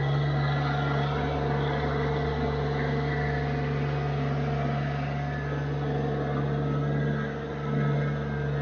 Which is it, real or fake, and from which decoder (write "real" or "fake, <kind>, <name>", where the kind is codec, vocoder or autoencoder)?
real